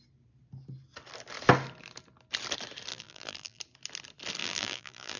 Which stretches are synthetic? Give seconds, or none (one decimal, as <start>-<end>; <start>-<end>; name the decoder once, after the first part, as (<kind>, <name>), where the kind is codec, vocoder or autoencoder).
2.9-3.6 (vocoder, BigVGAN v2); 4.4-5.2